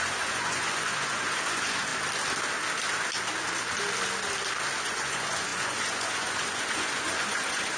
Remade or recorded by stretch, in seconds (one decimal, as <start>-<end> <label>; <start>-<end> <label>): 0.0-1.9 remade; 1.9-4.8 recorded; 4.8-7.8 remade